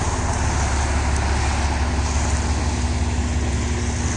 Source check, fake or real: real